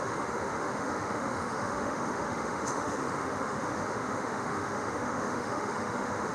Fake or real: fake